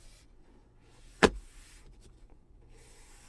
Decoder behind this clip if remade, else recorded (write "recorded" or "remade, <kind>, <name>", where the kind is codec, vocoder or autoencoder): remade, vocoder, Vocos